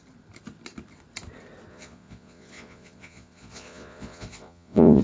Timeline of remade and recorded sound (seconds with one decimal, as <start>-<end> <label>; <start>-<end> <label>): 0.0-1.7 recorded; 1.7-5.0 remade